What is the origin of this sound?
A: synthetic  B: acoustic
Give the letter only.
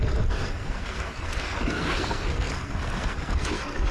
A